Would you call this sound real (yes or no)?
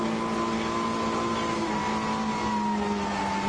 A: yes